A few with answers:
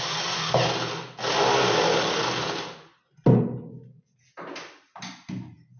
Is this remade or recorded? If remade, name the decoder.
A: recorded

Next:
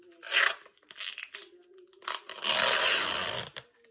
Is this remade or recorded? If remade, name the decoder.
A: recorded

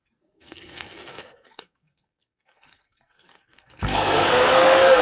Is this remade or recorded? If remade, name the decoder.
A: remade, codec, SNAC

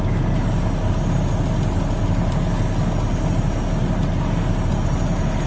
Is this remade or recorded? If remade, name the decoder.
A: recorded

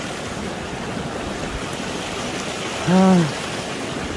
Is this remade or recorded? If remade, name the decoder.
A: recorded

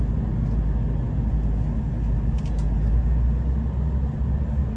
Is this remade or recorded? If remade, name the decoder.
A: recorded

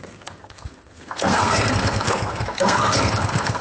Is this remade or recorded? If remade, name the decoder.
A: remade, codec, SNAC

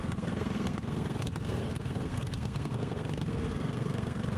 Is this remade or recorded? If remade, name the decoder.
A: remade, codec, SNAC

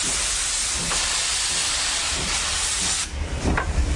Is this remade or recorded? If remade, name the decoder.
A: recorded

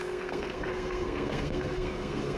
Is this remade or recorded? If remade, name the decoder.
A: remade, codec, SNAC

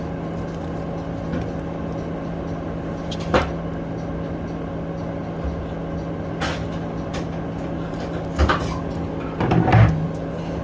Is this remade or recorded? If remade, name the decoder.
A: recorded